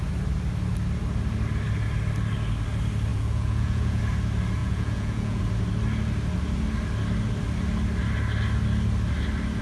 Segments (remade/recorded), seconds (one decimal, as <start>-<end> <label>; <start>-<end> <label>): 0.0-3.1 recorded; 3.1-4.0 remade; 4.0-4.6 recorded; 4.6-5.4 remade; 5.4-9.6 recorded

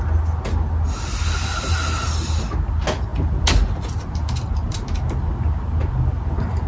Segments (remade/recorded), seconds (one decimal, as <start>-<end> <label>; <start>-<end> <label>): 0.0-6.7 recorded

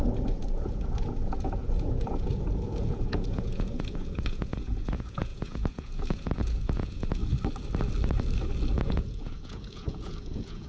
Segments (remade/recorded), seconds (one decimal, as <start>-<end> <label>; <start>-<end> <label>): 0.0-7.2 remade; 7.2-8.8 recorded; 8.8-10.7 remade